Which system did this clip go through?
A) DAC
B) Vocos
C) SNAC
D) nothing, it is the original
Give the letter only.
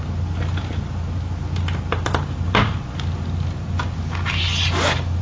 D